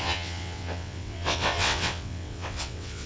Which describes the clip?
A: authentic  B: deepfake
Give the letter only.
B